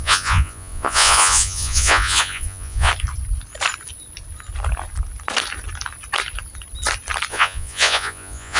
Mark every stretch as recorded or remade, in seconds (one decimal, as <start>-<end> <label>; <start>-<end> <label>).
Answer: 0.0-2.9 remade; 2.9-7.3 recorded; 7.3-8.6 remade